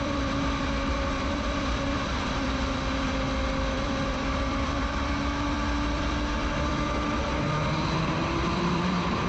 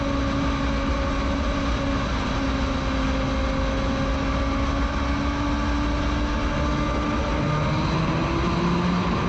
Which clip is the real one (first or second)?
second